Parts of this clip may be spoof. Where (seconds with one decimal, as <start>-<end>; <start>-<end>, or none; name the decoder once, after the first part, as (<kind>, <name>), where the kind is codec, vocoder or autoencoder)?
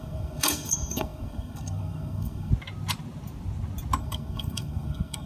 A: 0.0-2.5 (codec, SNAC); 4.0-5.3